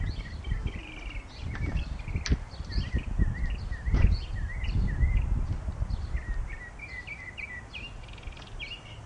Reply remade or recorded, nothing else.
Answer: recorded